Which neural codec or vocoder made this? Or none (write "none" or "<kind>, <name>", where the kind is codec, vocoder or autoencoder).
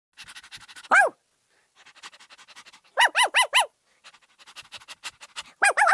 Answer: none